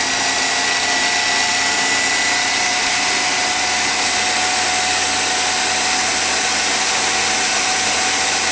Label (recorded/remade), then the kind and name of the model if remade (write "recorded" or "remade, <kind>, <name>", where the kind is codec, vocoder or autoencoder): recorded